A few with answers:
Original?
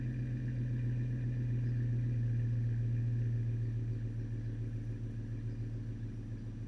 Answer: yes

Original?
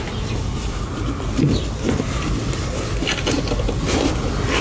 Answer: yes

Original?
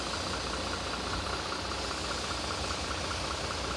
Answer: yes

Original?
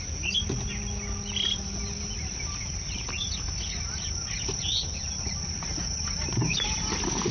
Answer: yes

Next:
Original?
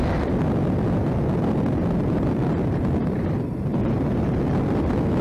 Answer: yes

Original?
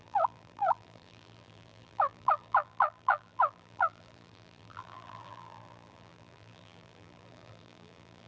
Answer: no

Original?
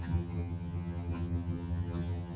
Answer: no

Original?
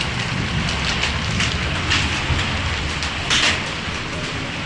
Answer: yes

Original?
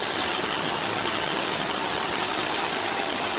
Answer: no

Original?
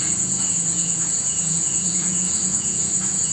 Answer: no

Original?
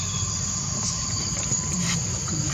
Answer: yes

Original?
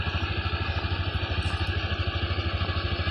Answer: yes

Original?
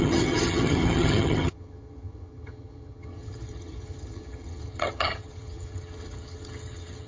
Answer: no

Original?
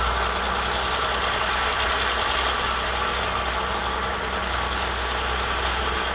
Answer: yes